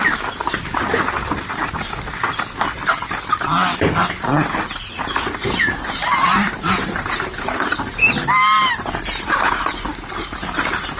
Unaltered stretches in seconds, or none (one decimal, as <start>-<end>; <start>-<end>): 0.0-3.7; 6.7-11.0